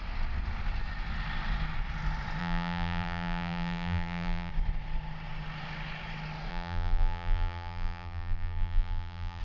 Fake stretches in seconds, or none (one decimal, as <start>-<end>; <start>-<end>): 2.4-4.5; 6.5-9.4